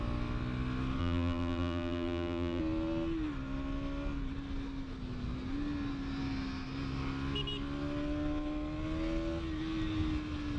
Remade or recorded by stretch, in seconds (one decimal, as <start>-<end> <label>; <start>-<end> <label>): 0.0-1.0 recorded; 1.0-2.6 remade; 2.6-10.6 recorded